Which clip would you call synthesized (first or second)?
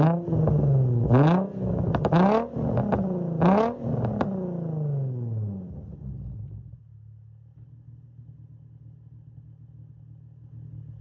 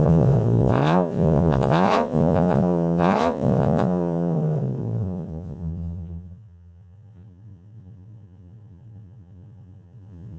second